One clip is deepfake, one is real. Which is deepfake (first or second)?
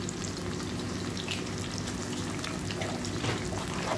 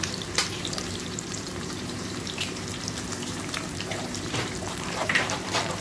second